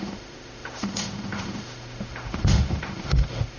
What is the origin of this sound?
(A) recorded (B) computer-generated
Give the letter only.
B